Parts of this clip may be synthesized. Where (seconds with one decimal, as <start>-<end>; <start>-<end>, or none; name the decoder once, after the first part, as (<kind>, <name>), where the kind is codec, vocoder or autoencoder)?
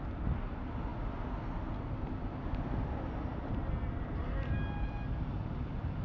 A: 3.3-4.5 (vocoder, BigVGAN v2)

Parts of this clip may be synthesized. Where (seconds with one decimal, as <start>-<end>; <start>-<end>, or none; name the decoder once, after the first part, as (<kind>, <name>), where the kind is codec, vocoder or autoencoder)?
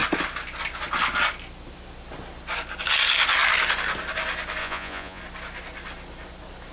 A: 4.6-5.2 (vocoder, Vocos)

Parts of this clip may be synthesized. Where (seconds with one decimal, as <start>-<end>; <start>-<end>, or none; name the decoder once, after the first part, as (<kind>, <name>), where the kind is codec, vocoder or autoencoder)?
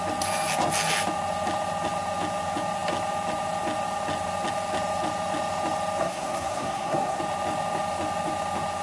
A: 6.0-7.2 (codec, SNAC)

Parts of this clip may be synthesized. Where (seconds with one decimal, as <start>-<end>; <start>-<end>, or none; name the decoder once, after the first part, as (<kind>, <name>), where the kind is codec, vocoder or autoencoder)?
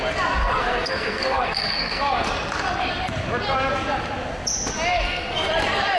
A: 0.4-2.3 (codec, SNAC); 4.9-5.5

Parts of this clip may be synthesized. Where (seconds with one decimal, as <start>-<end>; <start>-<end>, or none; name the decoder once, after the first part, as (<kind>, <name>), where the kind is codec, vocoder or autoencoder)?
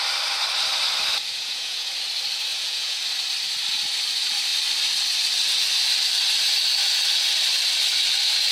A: 1.3-1.9 (vocoder, Vocos); 2.5-3.0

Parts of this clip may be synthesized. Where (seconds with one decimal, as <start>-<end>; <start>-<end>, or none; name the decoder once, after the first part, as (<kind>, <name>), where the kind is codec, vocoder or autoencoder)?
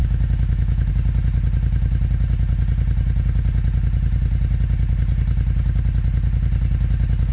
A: 0.0-0.9 (autoencoder, DAC-VAE)